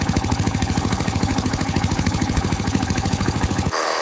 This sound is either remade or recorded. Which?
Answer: remade